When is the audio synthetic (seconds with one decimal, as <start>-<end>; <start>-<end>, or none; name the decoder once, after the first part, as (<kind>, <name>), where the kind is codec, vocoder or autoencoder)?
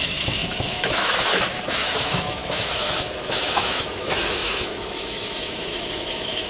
0.0-6.5 (autoencoder, DAC-VAE)